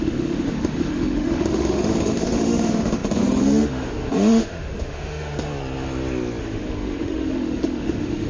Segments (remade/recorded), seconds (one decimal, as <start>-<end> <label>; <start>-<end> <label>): 0.0-5.5 remade; 5.5-6.4 recorded; 6.4-8.3 remade